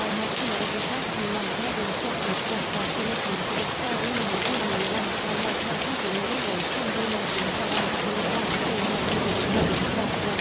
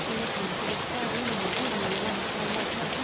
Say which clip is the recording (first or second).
second